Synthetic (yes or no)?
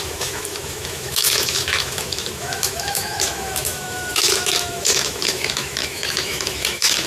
yes